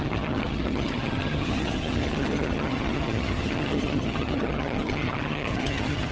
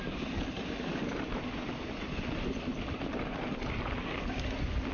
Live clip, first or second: second